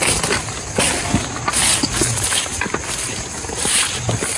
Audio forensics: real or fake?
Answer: real